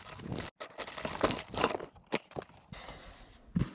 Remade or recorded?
recorded